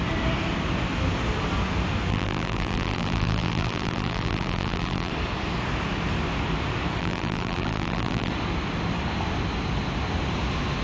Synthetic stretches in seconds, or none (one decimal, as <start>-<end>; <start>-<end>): 2.1-5.1; 7.0-8.3